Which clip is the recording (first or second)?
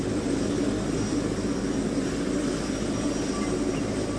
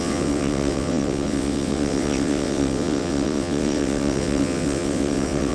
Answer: first